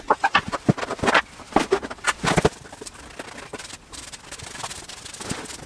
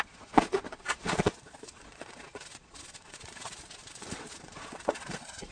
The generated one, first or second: second